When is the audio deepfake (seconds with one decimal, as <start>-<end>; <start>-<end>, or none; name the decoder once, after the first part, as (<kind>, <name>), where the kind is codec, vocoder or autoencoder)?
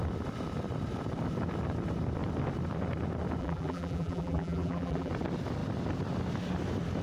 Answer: 3.4-5.1 (vocoder, BigVGAN v2)